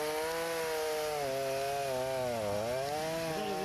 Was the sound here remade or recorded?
recorded